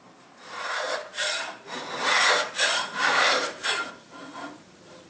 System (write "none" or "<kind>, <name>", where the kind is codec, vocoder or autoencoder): vocoder, BigVGAN v2